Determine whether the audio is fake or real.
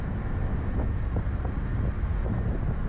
real